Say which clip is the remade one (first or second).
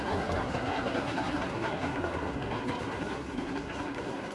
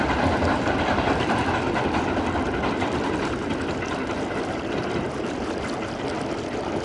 first